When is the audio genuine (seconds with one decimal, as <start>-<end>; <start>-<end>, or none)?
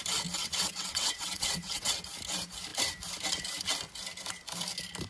0.0-0.4; 2.0-5.1